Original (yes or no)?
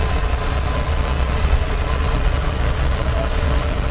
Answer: no